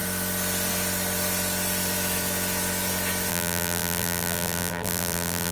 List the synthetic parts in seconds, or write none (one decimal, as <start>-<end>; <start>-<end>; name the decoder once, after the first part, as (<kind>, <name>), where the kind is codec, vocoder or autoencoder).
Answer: 3.3-5.5 (vocoder, BigVGAN v2)